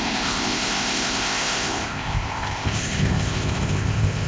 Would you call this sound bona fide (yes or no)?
no